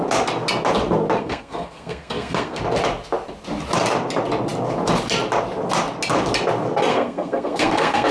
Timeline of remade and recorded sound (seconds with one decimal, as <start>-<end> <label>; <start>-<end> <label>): 0.0-1.2 recorded; 1.2-2.6 remade; 2.6-6.9 recorded; 6.9-8.1 remade